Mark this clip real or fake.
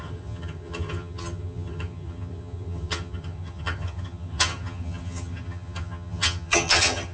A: fake